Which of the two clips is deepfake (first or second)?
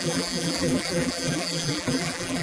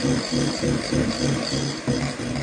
first